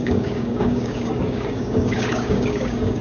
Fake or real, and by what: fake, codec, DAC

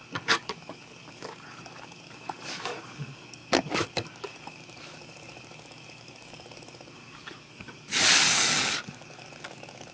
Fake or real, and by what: fake, codec, DAC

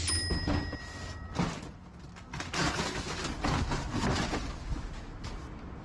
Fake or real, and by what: real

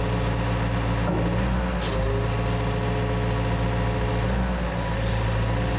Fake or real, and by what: real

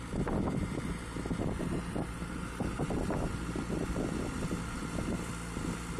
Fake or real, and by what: real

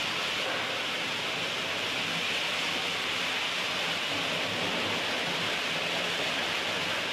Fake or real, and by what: real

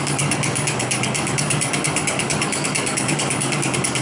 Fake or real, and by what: fake, codec, DAC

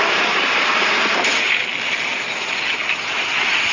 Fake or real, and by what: real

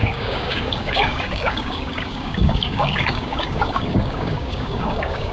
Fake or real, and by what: fake, codec, DAC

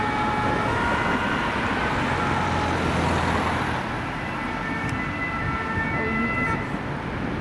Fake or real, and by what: real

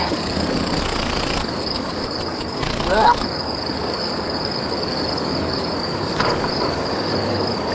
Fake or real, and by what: fake, codec, DAC